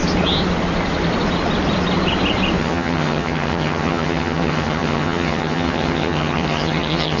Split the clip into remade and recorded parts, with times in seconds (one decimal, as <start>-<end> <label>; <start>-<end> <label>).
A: 0.0-2.6 recorded; 2.6-7.2 remade